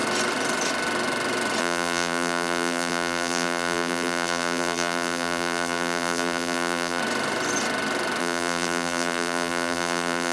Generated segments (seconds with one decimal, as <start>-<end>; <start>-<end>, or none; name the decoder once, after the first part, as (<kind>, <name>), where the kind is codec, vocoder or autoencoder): 1.6-7.0 (vocoder, BigVGAN v2); 8.2-10.3